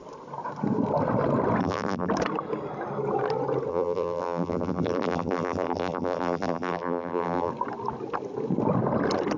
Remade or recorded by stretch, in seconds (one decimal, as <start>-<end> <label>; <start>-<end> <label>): 0.0-1.6 recorded; 1.6-2.1 remade; 2.1-3.7 recorded; 3.7-7.5 remade; 7.5-9.4 recorded